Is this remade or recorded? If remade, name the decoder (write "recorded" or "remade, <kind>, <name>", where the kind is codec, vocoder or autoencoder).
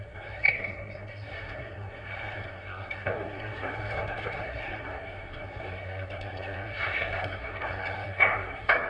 remade, codec, SNAC